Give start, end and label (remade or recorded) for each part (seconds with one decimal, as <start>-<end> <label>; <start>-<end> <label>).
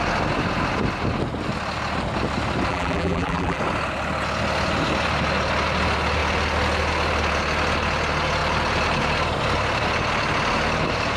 0.0-2.7 recorded; 2.7-3.6 remade; 3.6-11.2 recorded